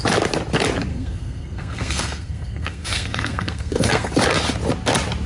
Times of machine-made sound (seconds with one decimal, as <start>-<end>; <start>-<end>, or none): 0.9-4.1